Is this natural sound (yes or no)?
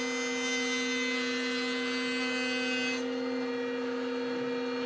yes